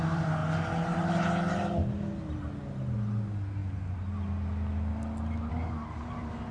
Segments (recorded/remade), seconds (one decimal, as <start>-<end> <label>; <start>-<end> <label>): 0.0-6.5 recorded